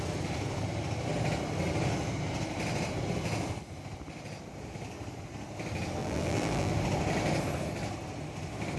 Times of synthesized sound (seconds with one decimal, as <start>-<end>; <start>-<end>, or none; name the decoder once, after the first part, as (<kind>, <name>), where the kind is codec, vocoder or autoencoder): 6.0-6.7 (vocoder, BigVGAN v2)